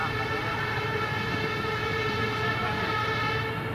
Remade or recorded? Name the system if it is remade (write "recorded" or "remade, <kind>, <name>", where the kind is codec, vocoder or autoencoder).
recorded